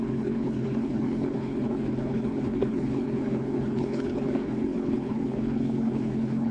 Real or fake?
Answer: fake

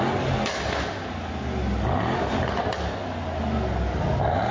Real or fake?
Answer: real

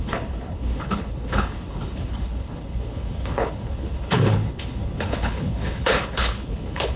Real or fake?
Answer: fake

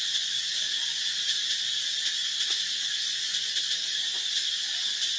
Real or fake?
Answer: real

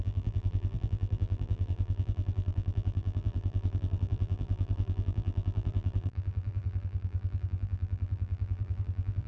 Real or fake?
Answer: fake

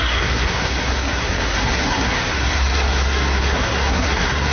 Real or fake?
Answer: fake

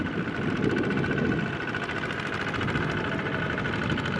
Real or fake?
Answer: real